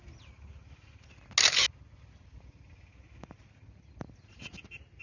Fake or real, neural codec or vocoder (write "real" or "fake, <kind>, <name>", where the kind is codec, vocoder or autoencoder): real